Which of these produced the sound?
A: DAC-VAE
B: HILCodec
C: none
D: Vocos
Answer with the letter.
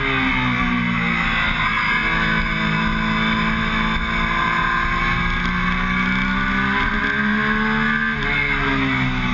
C